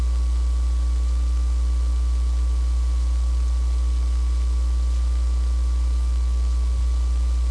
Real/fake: real